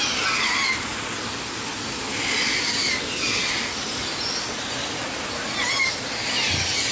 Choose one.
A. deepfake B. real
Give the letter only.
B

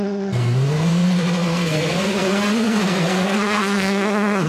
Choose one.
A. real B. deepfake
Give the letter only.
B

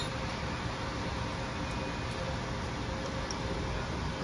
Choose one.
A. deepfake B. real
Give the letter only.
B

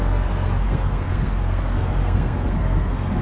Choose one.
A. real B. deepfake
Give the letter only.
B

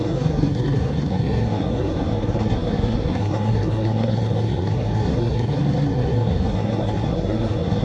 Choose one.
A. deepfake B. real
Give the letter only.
A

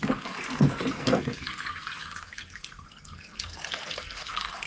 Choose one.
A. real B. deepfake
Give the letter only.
B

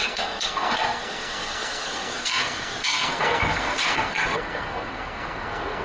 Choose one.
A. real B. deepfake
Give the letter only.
B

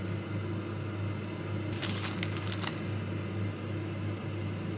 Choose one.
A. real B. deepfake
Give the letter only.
A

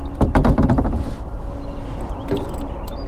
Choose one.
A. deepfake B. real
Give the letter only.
B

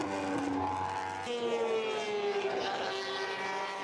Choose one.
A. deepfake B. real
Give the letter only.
B